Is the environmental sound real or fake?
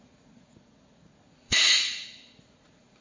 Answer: fake